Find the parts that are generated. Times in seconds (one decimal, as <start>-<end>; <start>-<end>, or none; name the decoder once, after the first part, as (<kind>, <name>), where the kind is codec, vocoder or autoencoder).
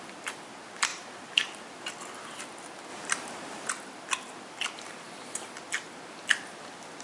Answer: 0.9-1.9 (vocoder, BigVGAN v2); 2.9-3.7